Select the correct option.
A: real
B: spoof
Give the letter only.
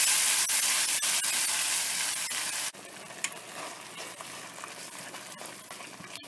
A